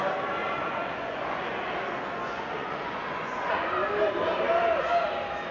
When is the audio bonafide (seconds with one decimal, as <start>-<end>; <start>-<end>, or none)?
0.0-0.4; 3.7-5.5